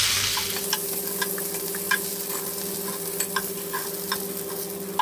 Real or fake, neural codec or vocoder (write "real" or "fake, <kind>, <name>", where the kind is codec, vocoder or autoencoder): real